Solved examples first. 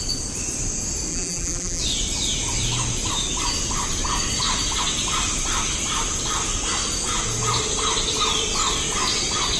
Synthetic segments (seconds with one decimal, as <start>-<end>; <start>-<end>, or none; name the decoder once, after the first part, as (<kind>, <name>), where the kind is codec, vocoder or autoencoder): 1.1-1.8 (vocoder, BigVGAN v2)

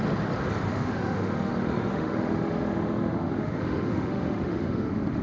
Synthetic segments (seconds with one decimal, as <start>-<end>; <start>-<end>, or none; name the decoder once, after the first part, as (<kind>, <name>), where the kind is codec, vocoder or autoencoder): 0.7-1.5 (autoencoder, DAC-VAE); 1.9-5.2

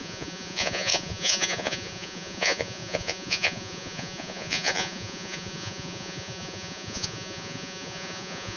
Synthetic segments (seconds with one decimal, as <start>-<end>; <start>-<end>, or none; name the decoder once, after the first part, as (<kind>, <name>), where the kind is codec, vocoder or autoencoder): 0.0-8.6 (vocoder, Vocos)